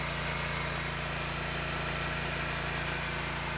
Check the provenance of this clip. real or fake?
real